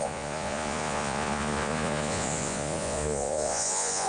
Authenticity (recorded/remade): remade